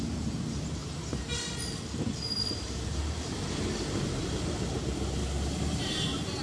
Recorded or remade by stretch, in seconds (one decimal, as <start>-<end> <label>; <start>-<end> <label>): 0.0-0.8 remade; 0.8-2.5 recorded; 2.5-5.2 remade; 5.2-5.8 recorded; 5.8-6.4 remade